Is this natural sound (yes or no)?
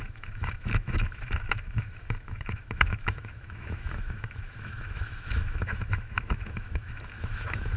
no